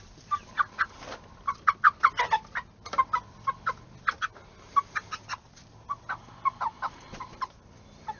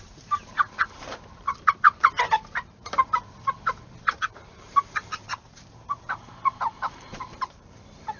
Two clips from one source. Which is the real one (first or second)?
first